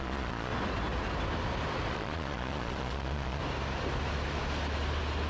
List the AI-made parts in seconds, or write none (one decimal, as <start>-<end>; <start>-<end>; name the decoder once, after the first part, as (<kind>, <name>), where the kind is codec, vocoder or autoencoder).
0.0-0.5 (vocoder, Vocos); 1.9-3.4